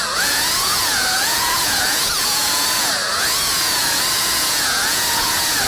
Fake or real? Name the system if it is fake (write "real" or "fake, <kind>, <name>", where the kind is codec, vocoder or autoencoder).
fake, vocoder, Vocos